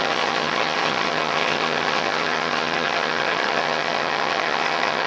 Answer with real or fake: fake